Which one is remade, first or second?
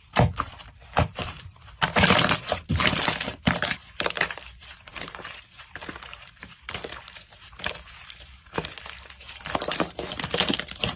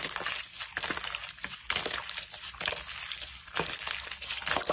first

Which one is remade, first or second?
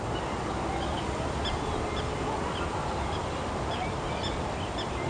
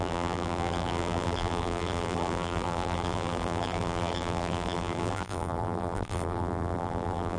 second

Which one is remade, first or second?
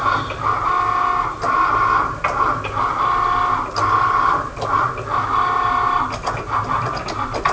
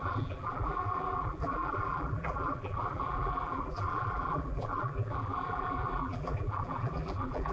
second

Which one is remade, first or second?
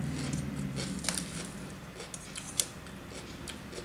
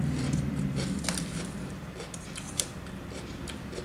second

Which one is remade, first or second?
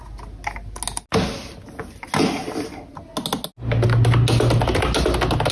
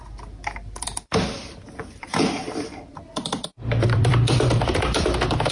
second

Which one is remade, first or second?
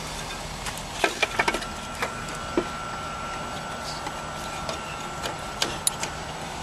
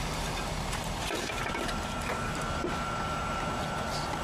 second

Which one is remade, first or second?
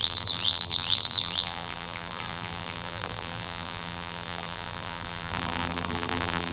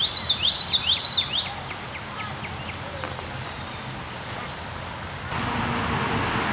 first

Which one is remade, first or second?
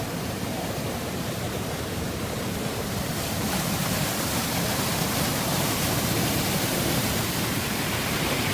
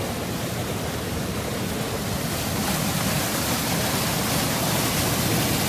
first